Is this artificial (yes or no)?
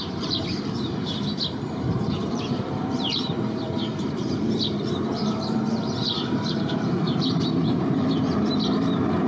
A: yes